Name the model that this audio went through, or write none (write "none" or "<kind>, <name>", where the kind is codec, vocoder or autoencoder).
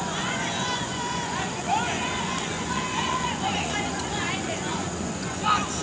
vocoder, Vocos